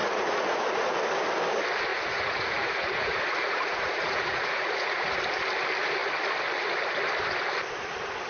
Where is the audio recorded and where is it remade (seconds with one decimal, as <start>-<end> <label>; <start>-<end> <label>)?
0.0-0.6 remade; 0.6-1.9 recorded; 1.9-5.2 remade; 5.2-8.3 recorded